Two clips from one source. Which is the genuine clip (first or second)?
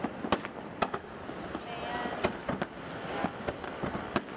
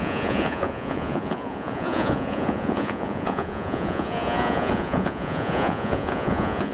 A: first